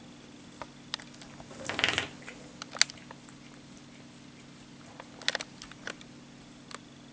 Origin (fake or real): real